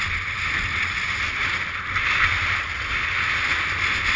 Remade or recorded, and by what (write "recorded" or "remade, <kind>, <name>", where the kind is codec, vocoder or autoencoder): recorded